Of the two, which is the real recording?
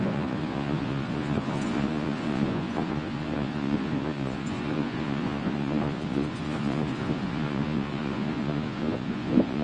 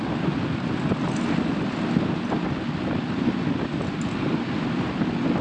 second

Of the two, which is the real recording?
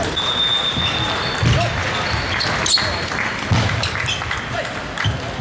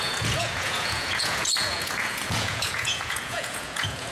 first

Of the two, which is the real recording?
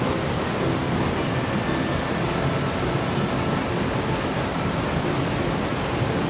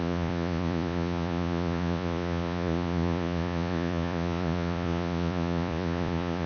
first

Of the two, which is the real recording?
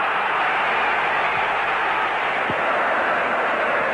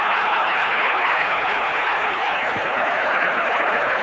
first